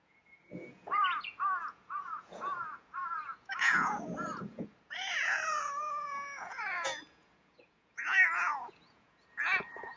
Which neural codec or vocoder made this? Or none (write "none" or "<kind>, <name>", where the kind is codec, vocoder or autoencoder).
vocoder, Vocos